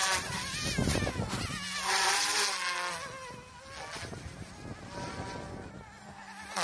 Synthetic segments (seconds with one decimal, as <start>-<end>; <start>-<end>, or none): none